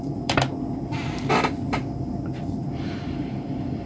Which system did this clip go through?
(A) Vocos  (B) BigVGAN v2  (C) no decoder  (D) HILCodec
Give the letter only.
B